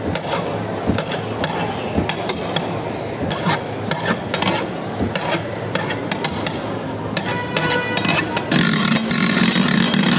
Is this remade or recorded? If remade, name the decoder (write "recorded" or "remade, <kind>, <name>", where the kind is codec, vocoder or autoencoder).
recorded